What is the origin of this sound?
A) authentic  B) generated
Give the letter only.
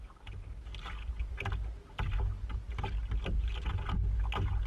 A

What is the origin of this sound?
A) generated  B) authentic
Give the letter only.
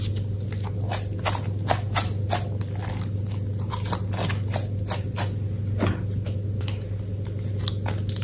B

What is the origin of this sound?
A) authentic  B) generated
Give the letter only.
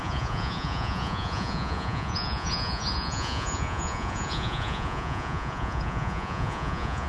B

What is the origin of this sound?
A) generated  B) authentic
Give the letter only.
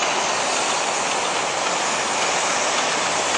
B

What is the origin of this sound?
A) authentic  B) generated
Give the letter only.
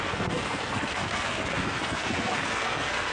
B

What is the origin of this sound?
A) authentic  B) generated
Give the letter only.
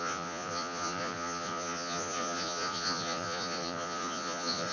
B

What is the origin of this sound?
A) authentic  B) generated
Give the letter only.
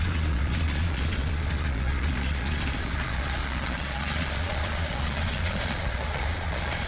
B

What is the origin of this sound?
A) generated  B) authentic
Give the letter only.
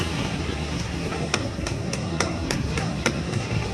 A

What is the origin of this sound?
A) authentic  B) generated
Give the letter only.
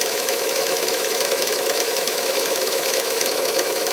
B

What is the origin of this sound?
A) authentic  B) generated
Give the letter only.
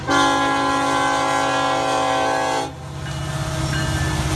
A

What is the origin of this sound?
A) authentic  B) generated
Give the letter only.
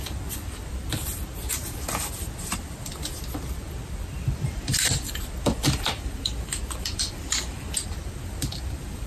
B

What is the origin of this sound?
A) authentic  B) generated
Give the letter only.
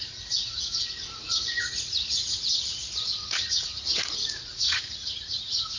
B